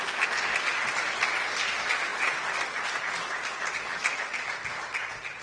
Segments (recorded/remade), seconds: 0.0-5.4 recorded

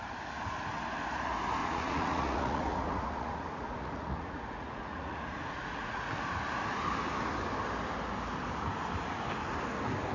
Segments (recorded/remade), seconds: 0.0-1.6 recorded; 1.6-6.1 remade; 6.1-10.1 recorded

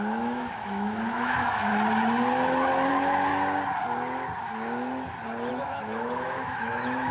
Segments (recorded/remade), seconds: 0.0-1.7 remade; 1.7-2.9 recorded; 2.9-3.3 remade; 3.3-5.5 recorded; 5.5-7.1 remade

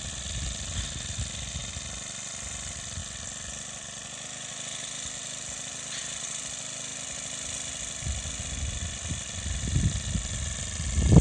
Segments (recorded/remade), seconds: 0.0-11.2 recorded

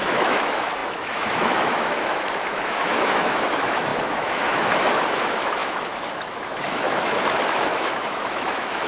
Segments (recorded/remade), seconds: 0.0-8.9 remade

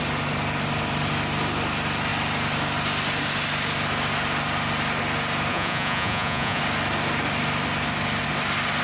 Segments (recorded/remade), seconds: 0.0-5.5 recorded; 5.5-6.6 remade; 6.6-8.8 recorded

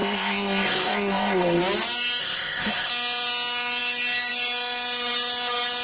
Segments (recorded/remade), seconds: 0.0-1.6 remade; 1.6-2.2 recorded; 2.2-2.9 remade; 2.9-5.8 recorded

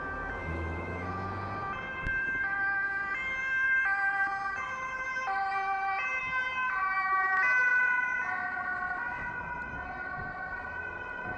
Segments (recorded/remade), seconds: 0.0-0.4 recorded; 0.4-1.1 remade; 1.1-11.4 recorded